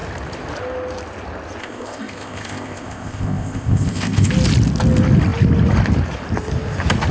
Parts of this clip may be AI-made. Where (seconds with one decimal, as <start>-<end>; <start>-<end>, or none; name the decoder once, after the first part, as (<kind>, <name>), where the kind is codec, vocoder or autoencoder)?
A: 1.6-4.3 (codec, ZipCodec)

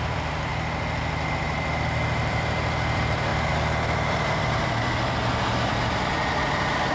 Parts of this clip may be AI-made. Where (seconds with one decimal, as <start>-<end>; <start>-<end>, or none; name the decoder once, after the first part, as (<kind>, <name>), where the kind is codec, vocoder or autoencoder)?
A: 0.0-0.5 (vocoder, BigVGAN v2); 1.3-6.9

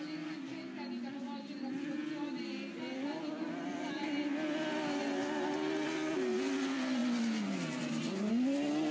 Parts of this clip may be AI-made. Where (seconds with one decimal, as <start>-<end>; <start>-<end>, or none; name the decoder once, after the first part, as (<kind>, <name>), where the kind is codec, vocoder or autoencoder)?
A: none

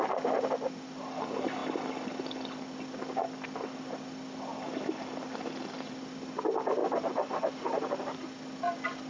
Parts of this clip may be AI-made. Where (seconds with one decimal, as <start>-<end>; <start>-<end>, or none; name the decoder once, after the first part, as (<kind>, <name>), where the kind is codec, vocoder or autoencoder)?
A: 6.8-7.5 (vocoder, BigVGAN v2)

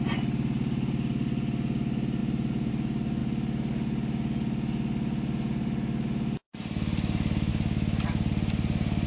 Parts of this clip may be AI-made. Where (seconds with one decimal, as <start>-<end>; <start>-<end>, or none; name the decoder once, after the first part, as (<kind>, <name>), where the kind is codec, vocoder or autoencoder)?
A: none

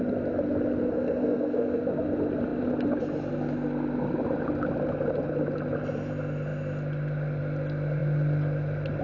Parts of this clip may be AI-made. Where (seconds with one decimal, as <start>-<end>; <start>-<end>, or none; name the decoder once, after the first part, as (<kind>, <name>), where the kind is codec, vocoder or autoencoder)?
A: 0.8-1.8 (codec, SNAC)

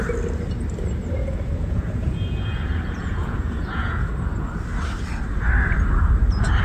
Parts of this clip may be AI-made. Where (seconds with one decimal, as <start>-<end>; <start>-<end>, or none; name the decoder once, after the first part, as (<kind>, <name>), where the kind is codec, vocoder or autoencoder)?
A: 1.2-4.1 (vocoder, Vocos)